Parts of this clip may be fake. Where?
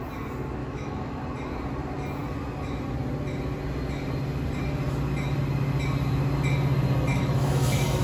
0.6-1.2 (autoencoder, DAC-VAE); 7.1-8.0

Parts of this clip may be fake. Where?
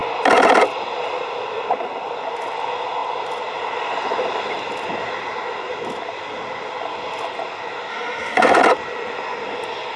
7.9-8.6 (autoencoder, DAC-VAE)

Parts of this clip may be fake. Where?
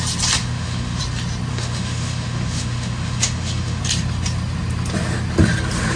0.4-1.0 (autoencoder, DAC-VAE); 1.5-3.8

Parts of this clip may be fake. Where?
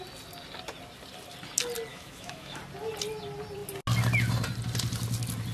1.9-2.6 (autoencoder, DAC-VAE)